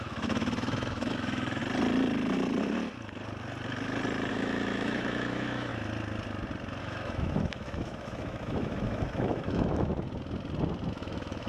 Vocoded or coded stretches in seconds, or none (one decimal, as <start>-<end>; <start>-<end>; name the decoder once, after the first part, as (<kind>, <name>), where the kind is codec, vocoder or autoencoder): 0.0-1.6 (autoencoder, DAC-VAE); 4.3-5.7; 6.8-9.9; 10.9-11.5

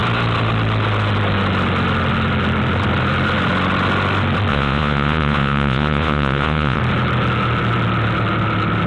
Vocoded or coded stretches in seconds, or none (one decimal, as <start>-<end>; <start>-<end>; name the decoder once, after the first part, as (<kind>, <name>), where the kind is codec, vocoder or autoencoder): 4.5-6.8 (vocoder, Vocos)

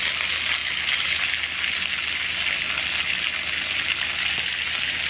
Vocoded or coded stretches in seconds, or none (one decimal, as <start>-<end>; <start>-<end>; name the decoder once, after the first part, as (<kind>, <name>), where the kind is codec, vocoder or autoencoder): none

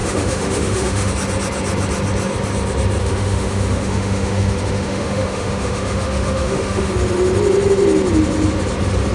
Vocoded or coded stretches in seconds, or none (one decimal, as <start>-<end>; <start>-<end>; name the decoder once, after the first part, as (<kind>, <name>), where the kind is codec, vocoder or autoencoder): 0.0-1.1 (autoencoder, DAC-VAE); 3.0-6.9